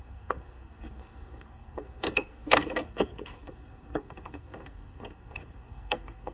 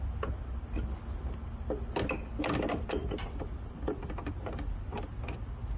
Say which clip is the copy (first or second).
first